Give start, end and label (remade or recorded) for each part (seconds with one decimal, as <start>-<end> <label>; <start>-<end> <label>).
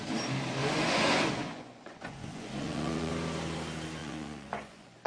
0.0-0.6 recorded; 0.6-3.1 remade; 3.1-4.0 recorded; 4.0-5.1 remade